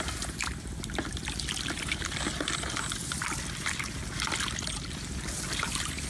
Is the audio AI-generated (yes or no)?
no